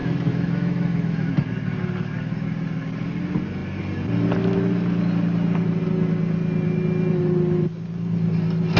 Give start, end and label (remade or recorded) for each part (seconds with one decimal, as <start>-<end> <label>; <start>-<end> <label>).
0.0-1.3 remade; 1.3-8.8 recorded